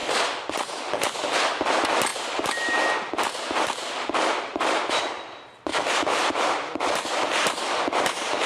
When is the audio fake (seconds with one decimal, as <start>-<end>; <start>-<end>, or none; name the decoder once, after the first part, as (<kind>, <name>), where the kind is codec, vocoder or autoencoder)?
0.0-0.9 (vocoder, BigVGAN v2); 2.1-4.9; 5.7-7.1